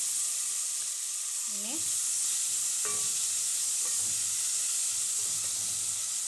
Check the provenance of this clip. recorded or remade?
recorded